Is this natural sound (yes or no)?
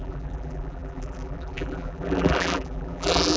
no